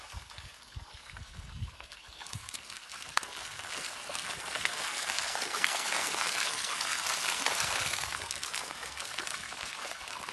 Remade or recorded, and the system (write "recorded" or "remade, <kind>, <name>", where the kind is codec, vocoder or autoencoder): remade, codec, SNAC